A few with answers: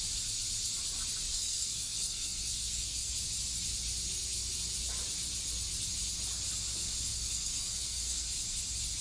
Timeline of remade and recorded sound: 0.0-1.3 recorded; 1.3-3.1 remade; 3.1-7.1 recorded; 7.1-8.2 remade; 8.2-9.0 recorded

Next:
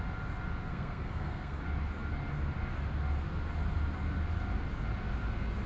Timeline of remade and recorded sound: 0.0-0.7 recorded; 0.7-1.6 remade; 1.6-5.7 recorded

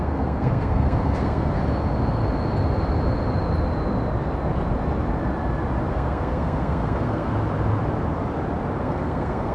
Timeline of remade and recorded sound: 0.0-1.6 remade; 1.6-5.9 recorded; 5.9-7.3 remade; 7.3-8.8 recorded; 8.8-9.5 remade

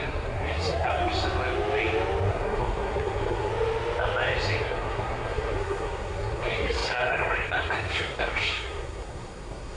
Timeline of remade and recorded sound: 0.0-1.0 remade; 1.0-2.3 recorded; 2.3-3.5 remade; 3.5-4.6 recorded; 4.6-9.8 remade

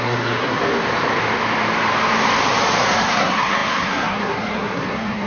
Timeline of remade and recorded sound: 0.0-0.6 remade; 0.6-2.8 recorded; 2.8-5.3 remade